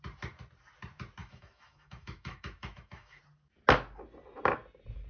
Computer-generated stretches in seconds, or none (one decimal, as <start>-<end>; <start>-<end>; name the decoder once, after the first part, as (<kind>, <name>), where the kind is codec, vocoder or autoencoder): 1.2-3.2 (autoencoder, DAC-VAE)